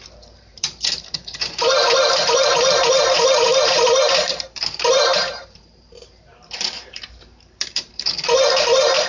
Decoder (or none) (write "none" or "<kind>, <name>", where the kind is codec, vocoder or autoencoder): vocoder, BigVGAN v2